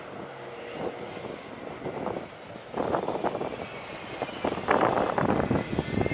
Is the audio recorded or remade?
recorded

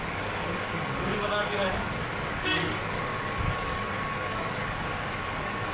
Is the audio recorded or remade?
remade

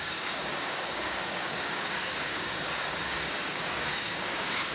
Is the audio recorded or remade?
remade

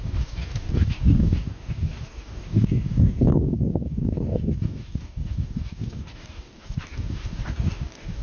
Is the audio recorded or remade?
remade